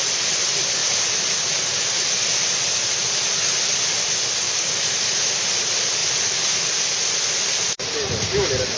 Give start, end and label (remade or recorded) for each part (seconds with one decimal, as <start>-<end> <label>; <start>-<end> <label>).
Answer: 0.0-0.8 recorded; 0.8-4.8 remade; 4.8-6.0 recorded; 6.0-8.8 remade